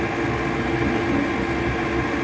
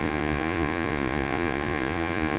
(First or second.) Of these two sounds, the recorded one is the first